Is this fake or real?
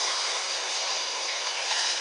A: fake